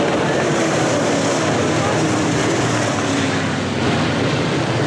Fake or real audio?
real